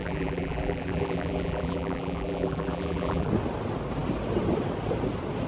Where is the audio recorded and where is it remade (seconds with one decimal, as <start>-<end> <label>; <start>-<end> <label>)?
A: 0.0-3.3 remade; 3.3-5.5 recorded